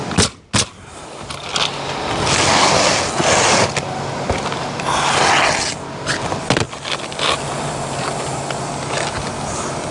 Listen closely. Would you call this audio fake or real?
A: real